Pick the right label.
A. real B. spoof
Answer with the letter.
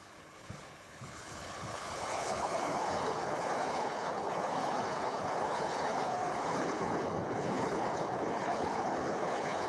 B